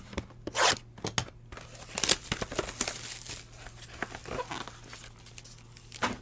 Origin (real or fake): real